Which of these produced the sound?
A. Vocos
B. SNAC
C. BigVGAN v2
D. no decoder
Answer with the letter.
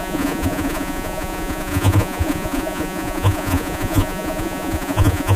A